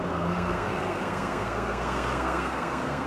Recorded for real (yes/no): no